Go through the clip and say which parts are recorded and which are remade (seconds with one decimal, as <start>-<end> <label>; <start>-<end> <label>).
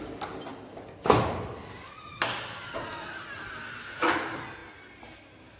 0.0-5.6 recorded